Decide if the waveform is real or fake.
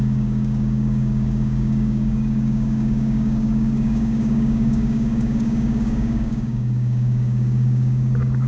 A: fake